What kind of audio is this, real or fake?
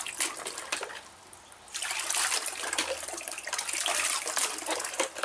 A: real